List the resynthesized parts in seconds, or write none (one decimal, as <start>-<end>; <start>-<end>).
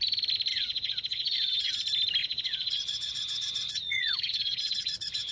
0.5-1.7; 2.2-5.3